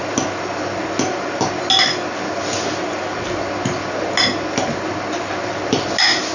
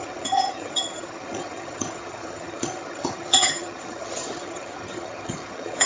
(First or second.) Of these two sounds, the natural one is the first